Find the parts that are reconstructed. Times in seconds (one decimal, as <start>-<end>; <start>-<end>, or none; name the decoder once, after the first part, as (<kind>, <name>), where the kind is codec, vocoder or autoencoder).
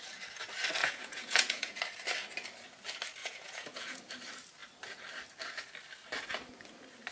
0.8-1.8 (vocoder, Vocos); 3.2-4.0